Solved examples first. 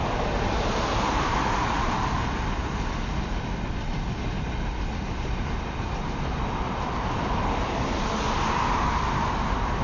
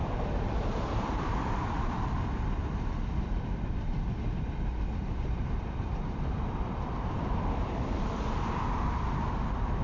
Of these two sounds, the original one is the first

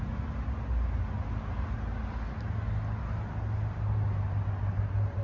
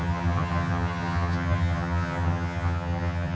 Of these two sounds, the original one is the first